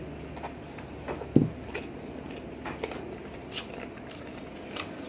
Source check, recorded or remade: recorded